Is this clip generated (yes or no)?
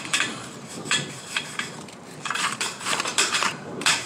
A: yes